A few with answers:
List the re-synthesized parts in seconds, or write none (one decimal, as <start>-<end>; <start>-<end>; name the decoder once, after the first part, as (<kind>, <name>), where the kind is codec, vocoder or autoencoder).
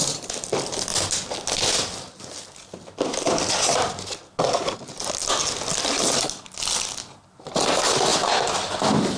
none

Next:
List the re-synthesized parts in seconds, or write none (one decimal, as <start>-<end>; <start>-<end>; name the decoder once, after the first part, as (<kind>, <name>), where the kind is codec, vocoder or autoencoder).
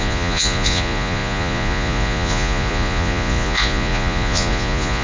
0.0-5.0 (vocoder, Vocos)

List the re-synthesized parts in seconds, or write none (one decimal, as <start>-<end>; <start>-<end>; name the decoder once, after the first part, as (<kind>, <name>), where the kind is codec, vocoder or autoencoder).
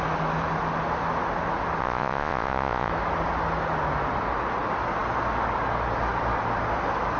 1.8-2.9 (vocoder, Vocos)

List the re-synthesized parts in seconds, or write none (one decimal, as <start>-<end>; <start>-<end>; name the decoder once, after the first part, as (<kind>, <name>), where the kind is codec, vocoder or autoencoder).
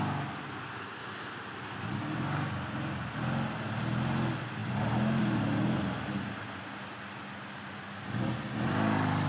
none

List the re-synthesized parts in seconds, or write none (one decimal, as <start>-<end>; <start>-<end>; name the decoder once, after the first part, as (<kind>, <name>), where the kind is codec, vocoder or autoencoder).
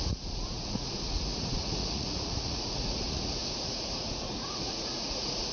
0.0-5.5 (vocoder, Vocos)